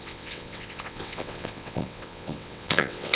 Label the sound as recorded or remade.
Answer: remade